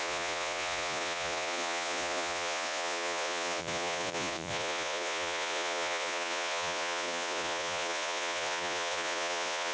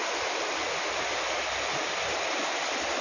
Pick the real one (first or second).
second